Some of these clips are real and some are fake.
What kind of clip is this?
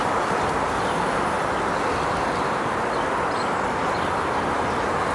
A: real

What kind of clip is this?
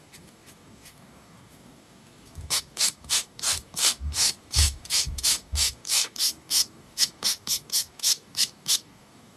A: fake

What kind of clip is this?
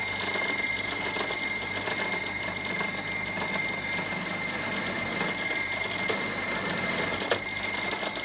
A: real